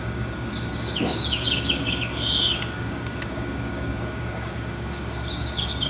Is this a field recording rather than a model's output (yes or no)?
no